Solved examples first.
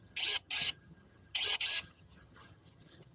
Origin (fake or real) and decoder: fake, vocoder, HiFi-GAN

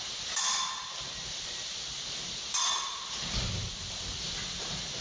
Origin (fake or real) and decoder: real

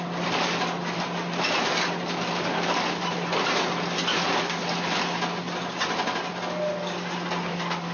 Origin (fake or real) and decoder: real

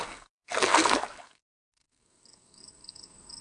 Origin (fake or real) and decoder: fake, codec, SNAC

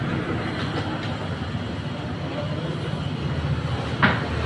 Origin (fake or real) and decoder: real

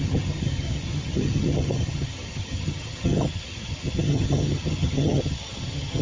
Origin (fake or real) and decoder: fake, vocoder, HiFi-GAN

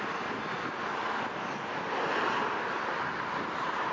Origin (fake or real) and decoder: real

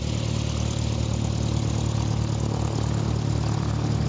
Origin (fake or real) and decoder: real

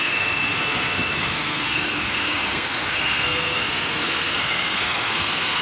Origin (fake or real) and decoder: fake, codec, SNAC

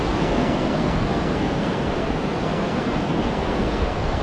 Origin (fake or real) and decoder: fake, codec, SNAC